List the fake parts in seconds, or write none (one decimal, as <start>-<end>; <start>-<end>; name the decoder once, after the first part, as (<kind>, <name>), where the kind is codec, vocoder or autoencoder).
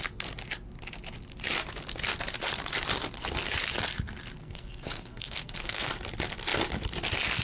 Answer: 4.4-5.9 (codec, SNAC)